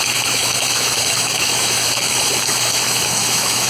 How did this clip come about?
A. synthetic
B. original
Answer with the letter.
A